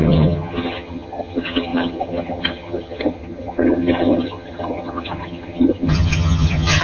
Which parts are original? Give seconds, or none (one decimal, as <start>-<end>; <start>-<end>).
none